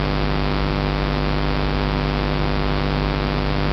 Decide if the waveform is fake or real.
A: real